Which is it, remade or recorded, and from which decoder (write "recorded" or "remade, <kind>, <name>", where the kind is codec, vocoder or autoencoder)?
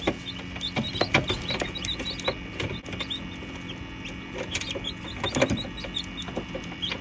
recorded